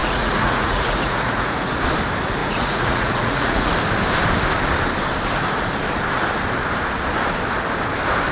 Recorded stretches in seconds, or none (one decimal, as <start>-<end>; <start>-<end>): 1.7-2.4; 3.7-8.3